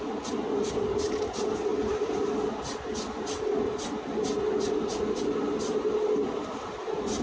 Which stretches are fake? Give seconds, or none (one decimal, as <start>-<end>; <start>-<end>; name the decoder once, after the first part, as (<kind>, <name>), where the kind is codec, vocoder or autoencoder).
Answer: none